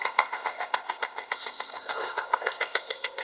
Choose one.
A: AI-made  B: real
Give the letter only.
A